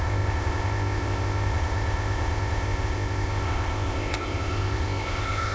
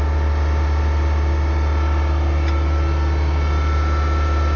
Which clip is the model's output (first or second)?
first